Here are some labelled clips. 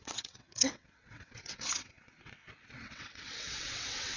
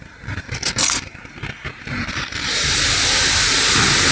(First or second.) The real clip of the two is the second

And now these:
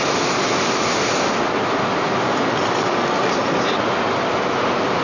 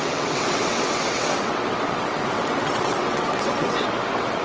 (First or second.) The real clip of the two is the first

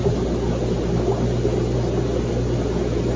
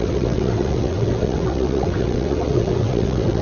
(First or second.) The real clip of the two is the first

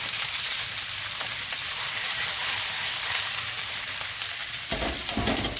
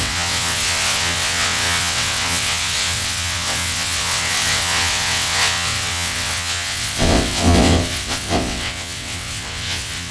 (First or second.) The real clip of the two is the first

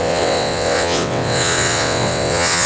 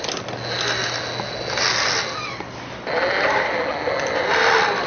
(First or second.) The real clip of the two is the second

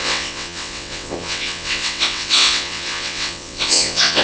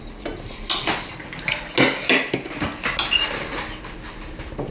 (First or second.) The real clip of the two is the second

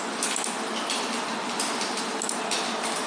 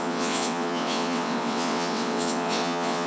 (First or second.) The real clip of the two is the first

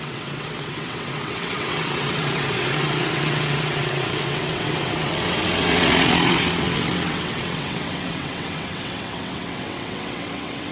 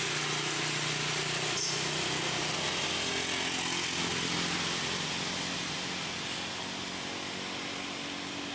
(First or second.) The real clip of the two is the second